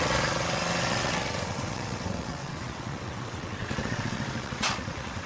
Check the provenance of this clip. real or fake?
fake